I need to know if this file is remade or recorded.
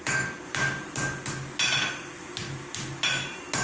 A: recorded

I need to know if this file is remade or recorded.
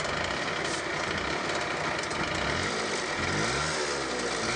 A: recorded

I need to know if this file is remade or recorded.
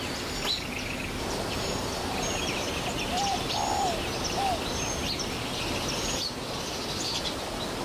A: remade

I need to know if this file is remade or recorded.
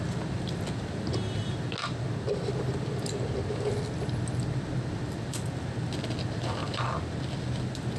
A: recorded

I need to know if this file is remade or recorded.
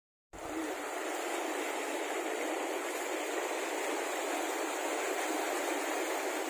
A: remade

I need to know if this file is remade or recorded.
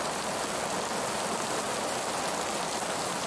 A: recorded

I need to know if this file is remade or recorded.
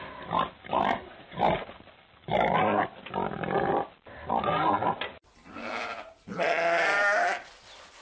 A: recorded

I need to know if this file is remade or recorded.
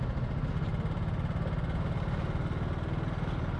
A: recorded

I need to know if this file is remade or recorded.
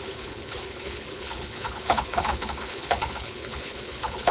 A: remade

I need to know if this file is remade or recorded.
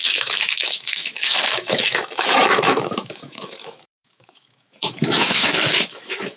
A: remade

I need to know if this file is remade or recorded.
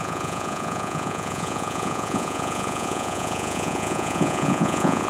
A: remade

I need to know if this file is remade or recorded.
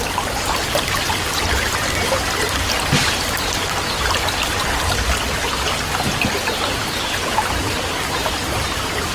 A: recorded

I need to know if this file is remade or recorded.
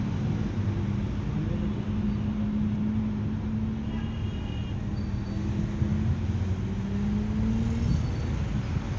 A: recorded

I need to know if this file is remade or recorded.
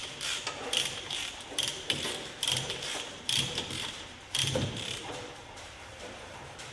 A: remade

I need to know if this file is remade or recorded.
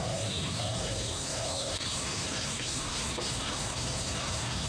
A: remade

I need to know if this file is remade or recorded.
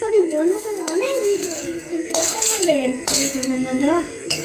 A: remade